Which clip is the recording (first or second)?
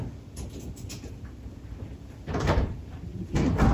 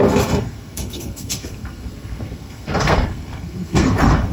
first